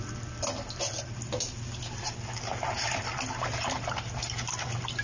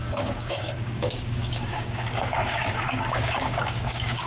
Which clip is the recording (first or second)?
first